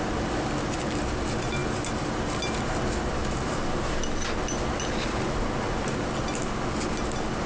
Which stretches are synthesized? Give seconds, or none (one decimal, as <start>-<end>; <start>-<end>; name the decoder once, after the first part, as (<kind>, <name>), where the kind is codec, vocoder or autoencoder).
none